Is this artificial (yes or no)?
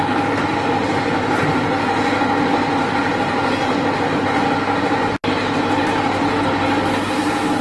no